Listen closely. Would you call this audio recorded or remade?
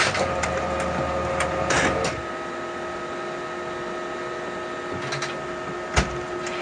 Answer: recorded